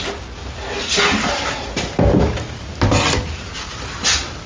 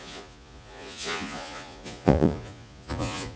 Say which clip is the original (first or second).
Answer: first